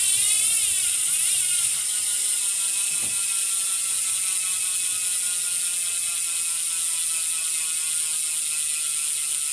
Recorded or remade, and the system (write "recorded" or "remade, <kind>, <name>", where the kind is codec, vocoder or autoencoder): recorded